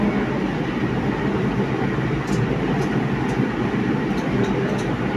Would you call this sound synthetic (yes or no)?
no